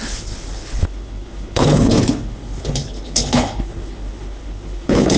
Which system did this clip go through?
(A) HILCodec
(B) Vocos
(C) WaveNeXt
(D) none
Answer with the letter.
A